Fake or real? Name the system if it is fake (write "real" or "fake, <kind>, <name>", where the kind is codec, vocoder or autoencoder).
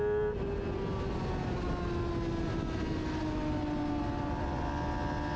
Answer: real